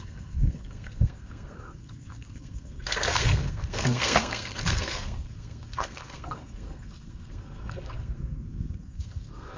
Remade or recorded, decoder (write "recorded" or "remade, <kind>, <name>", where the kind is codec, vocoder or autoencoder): remade, codec, SNAC